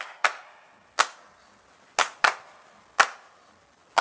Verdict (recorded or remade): recorded